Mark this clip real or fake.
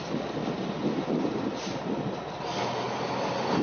real